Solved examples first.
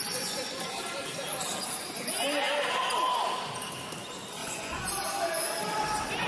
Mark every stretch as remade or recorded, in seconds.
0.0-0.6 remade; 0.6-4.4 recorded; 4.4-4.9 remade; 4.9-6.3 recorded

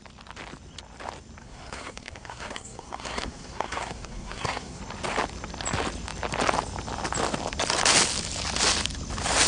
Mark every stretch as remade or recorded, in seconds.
0.0-1.4 recorded; 1.4-4.8 remade; 4.8-9.5 recorded

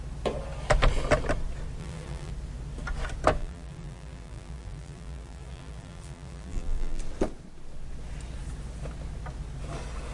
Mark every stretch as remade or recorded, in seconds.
0.0-1.8 recorded; 1.8-2.3 remade; 2.3-3.4 recorded; 3.4-7.0 remade; 7.0-10.1 recorded